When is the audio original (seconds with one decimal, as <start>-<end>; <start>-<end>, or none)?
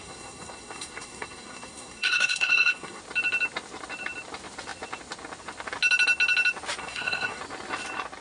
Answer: 3.0-6.8; 7.4-8.2